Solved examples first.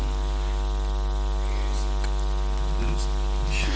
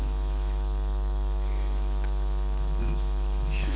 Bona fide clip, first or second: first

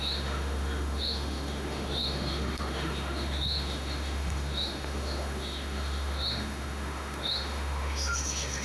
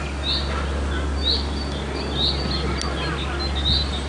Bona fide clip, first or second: second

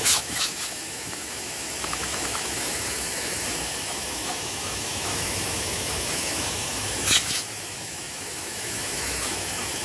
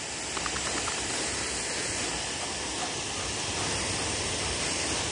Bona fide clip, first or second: second